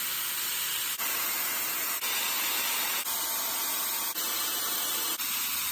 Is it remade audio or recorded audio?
recorded